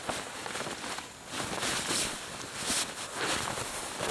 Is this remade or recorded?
recorded